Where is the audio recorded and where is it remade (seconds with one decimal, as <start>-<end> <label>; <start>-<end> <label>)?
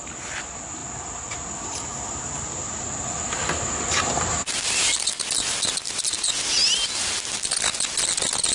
0.0-8.5 recorded